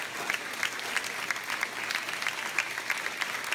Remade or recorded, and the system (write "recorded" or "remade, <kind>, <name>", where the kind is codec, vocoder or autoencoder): recorded